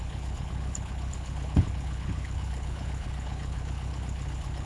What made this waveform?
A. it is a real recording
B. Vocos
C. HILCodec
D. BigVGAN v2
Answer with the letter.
C